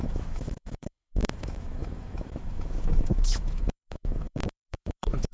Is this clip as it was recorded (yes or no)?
no